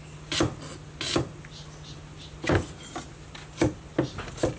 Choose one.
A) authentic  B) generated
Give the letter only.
A